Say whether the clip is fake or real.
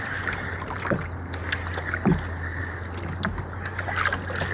real